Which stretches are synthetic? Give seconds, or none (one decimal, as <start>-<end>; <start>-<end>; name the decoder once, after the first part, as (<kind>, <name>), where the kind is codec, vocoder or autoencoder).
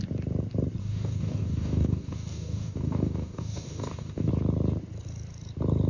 0.8-4.3 (codec, DAC)